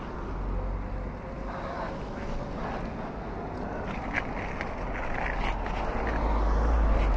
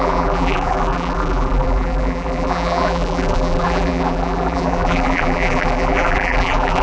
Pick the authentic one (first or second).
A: first